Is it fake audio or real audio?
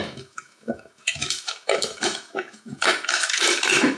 fake